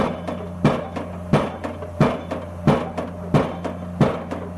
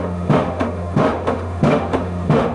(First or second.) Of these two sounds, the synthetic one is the second